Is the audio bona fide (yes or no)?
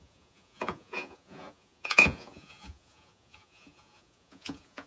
no